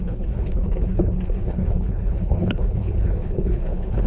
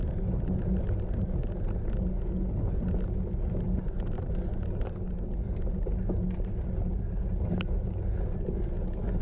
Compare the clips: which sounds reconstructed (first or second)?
first